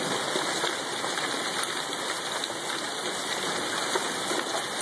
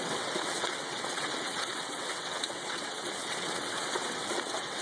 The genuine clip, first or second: first